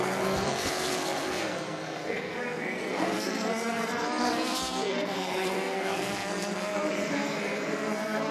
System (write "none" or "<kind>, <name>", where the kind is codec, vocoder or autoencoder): codec, SNAC